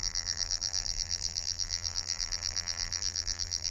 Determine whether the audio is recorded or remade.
remade